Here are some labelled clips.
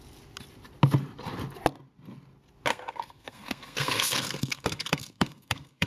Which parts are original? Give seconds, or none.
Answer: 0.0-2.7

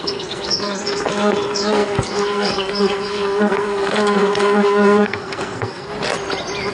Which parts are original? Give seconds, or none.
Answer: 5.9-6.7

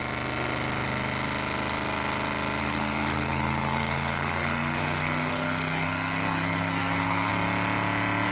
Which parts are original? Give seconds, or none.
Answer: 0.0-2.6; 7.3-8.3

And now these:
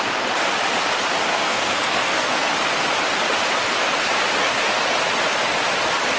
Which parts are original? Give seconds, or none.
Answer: 0.0-1.3; 2.4-6.2